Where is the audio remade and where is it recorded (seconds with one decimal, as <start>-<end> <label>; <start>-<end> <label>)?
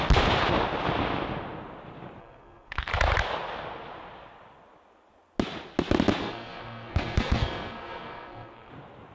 0.0-2.2 recorded; 2.2-2.9 remade; 2.9-6.2 recorded; 6.2-8.7 remade; 8.7-9.1 recorded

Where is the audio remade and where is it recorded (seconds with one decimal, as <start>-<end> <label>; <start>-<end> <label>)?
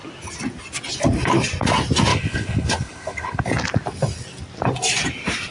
0.0-2.1 recorded; 2.1-3.4 remade; 3.4-5.5 recorded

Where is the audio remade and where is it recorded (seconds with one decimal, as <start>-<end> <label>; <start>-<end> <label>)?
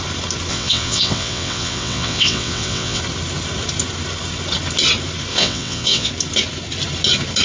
0.0-0.5 recorded; 0.5-3.0 remade; 3.0-5.3 recorded; 5.3-6.1 remade; 6.1-7.4 recorded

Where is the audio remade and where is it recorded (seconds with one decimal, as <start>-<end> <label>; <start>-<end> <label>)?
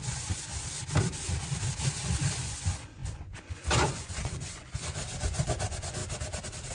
0.0-0.5 remade; 0.5-2.3 recorded; 2.3-6.0 remade; 6.0-6.7 recorded